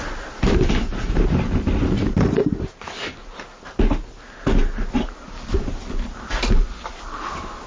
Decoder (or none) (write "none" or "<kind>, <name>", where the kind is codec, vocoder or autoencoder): none